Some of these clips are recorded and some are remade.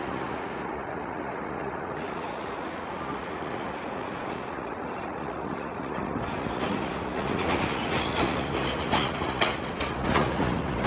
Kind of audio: remade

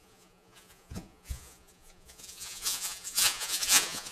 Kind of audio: remade